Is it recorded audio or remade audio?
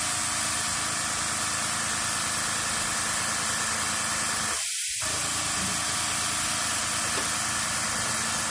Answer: recorded